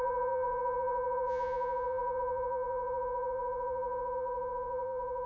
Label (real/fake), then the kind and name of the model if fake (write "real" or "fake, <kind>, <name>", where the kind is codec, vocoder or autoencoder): fake, vocoder, Vocos